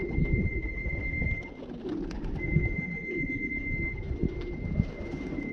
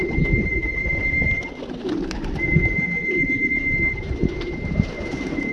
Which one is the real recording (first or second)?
first